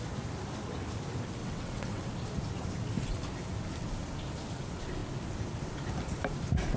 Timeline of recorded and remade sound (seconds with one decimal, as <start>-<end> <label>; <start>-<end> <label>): 0.0-1.4 recorded; 1.4-2.1 remade; 2.1-6.8 recorded